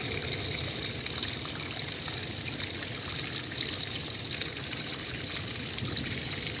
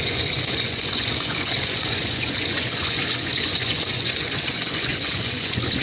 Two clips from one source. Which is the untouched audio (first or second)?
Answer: first